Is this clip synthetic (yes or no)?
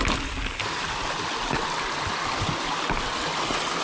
no